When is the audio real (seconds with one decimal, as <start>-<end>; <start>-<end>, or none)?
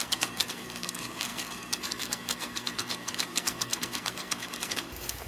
none